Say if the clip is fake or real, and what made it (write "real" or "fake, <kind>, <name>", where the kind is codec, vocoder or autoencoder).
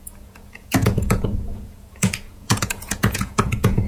fake, vocoder, Vocos